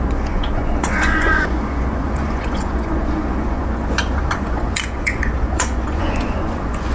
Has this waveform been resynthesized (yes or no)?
yes